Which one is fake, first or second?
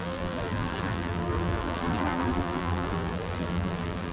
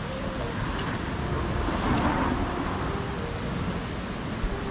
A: first